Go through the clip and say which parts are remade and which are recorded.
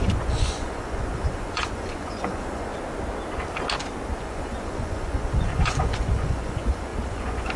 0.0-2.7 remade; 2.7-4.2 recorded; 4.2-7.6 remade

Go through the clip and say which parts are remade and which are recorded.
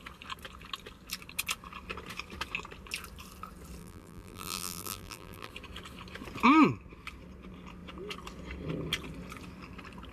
0.0-3.8 recorded; 3.8-5.5 remade; 5.5-10.1 recorded